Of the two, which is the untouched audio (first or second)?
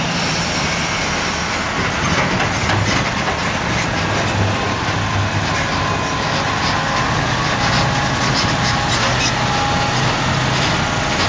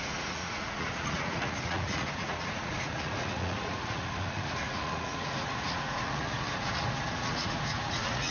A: first